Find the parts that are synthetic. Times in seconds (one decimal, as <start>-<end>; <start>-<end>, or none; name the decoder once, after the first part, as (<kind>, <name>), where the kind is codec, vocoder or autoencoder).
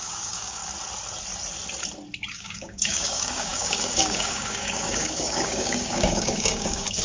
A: 0.0-0.6 (codec, DAC); 2.3-7.0